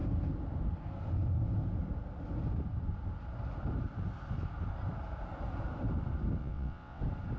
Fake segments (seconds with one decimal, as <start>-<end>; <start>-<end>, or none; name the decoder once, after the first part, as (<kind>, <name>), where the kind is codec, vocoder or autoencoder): 6.4-7.0 (vocoder, WaveNeXt)